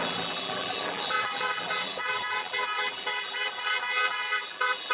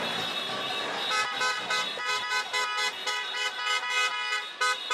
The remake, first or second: first